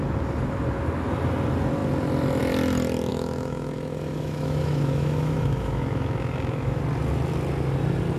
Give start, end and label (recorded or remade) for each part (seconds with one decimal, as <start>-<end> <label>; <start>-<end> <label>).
0.0-3.1 recorded; 3.1-6.8 remade; 6.8-8.2 recorded